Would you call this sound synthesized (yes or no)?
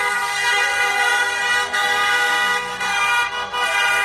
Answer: yes